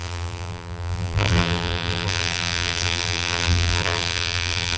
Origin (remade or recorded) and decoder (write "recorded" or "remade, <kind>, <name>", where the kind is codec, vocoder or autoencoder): remade, vocoder, BigVGAN v2